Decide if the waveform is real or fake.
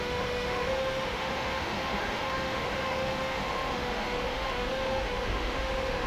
fake